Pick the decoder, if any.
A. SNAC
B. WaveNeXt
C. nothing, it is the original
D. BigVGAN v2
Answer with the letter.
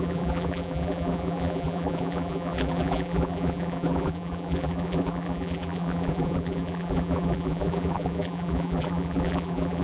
D